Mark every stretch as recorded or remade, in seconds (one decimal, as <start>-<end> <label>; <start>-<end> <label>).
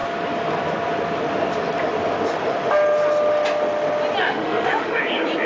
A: 0.0-4.2 recorded; 4.2-5.0 remade; 5.0-5.5 recorded